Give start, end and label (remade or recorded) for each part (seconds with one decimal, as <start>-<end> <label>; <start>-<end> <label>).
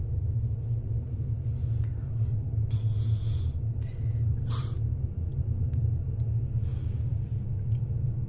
0.0-8.3 recorded